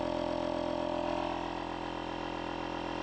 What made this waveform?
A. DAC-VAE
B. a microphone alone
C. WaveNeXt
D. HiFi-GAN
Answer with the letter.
B